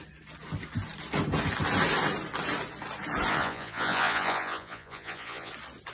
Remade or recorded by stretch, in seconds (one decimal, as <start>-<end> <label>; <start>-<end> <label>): 0.0-3.3 recorded; 3.3-5.5 remade; 5.5-5.9 recorded